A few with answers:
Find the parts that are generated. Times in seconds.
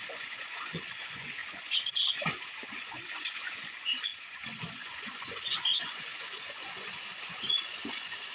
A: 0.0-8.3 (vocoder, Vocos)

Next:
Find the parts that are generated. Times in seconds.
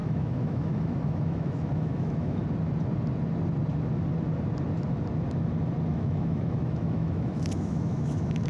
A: 0.0-2.4 (autoencoder, DAC-VAE); 5.9-8.5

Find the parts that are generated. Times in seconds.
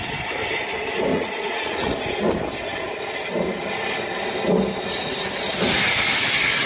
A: 1.1-2.0 (vocoder, Vocos)